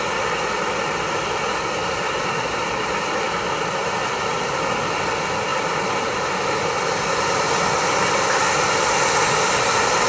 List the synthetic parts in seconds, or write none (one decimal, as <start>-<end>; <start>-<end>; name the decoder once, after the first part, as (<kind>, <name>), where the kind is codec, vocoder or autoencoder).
3.8-4.7 (vocoder, BigVGAN v2); 5.5-6.4